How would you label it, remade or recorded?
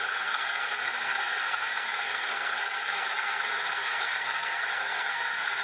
remade